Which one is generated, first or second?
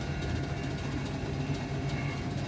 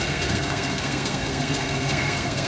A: second